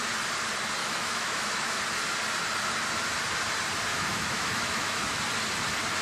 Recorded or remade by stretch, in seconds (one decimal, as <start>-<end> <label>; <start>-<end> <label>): 0.0-0.8 recorded; 0.8-1.8 remade; 1.8-3.9 recorded; 3.9-5.2 remade; 5.2-6.0 recorded